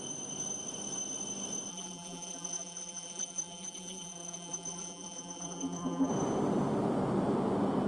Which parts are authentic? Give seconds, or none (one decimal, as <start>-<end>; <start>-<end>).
0.0-1.7; 6.1-7.9